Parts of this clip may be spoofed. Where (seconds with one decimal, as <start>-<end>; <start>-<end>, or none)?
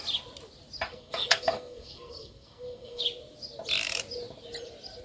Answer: 0.9-3.0